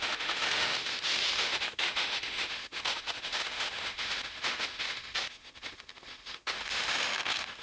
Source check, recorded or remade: remade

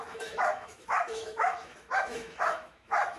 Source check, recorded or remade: remade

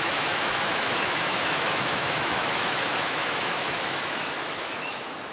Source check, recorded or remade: remade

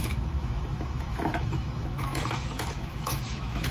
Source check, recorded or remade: remade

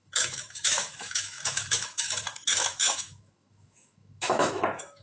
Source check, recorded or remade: remade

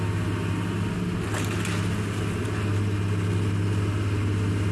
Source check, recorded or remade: recorded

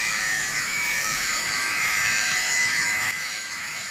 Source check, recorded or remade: remade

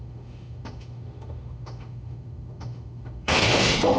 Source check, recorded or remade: remade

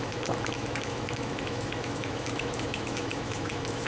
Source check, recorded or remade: remade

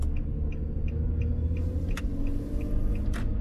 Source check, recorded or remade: recorded